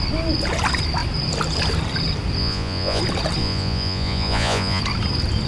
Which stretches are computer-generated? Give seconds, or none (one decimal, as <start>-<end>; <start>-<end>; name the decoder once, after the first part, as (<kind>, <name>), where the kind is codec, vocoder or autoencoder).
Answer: 2.4-3.0 (vocoder, Vocos); 3.4-4.8